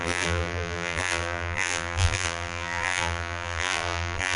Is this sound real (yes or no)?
no